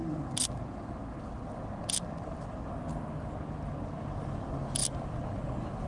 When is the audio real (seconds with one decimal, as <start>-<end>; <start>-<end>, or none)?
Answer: 0.0-5.9